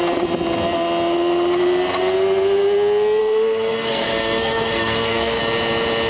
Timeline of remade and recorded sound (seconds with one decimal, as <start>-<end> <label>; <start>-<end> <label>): 0.0-3.2 recorded; 3.2-5.4 remade; 5.4-6.1 recorded